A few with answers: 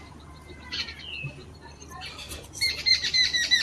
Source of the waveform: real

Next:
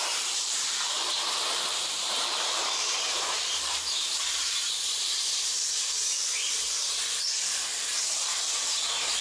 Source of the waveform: fake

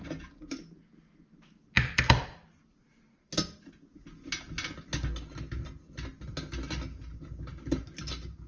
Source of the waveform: real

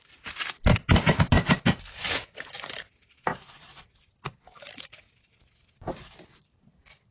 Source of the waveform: real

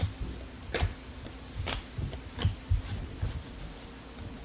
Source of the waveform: fake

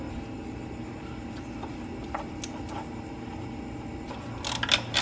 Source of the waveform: real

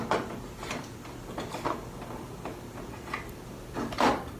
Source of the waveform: real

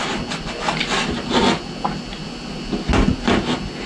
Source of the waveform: real